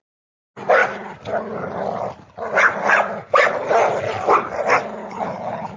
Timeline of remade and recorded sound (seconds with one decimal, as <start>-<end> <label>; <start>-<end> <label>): 0.0-5.0 recorded; 5.0-5.8 remade